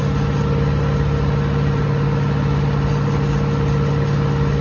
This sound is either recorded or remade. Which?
recorded